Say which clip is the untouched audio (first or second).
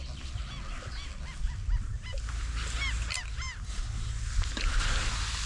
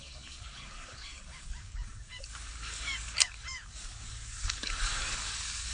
first